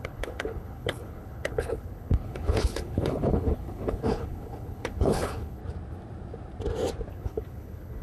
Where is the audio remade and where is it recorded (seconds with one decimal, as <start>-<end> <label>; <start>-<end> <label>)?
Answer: 0.0-5.6 remade; 5.6-7.1 recorded; 7.1-8.0 remade